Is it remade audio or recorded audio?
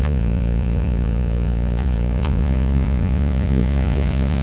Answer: remade